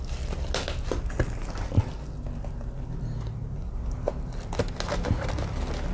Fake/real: real